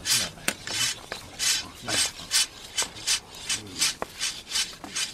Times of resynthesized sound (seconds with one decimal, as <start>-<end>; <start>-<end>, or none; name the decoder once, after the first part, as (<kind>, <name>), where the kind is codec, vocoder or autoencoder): 0.0-1.8 (vocoder, BigVGAN v2)